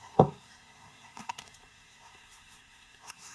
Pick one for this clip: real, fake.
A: fake